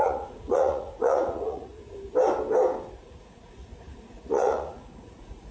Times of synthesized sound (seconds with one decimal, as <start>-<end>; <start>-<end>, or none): 0.0-1.7; 3.0-5.5